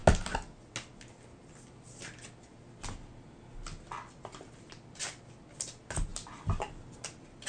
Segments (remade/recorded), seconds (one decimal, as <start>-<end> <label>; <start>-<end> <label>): 0.0-7.5 recorded